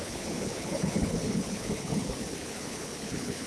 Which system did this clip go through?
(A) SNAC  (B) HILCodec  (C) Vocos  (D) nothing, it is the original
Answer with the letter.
B